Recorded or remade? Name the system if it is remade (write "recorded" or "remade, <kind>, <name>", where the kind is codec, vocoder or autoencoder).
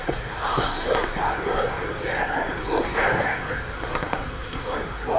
remade, codec, SNAC